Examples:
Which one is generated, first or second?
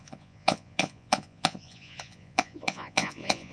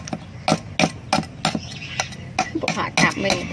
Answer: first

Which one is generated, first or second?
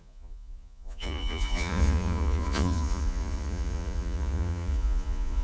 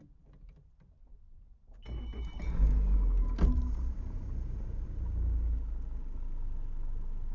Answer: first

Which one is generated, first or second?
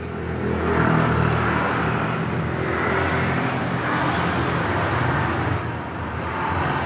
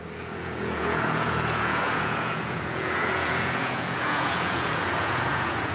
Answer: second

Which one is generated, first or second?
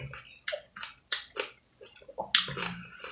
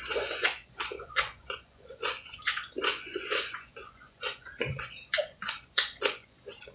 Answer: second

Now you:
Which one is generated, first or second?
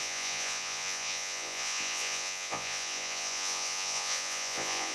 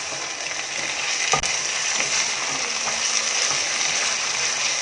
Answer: first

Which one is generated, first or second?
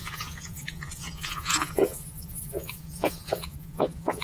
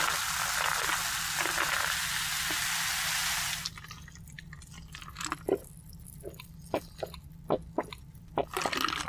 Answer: first